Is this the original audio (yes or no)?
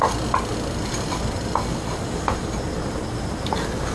yes